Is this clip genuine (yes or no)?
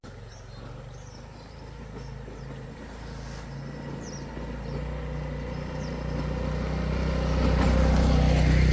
yes